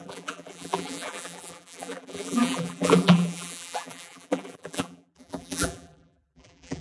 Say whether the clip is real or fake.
fake